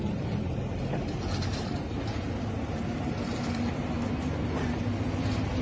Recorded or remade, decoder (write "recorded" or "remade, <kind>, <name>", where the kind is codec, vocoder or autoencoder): recorded